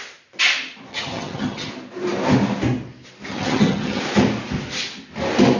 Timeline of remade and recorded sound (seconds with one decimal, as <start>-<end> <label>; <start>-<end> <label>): 0.0-0.9 recorded; 0.9-1.7 remade; 1.7-3.3 recorded; 3.3-4.0 remade; 4.0-5.6 recorded